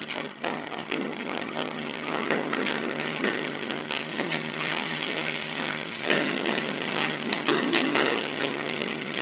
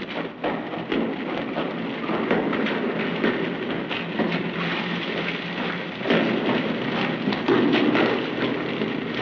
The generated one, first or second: first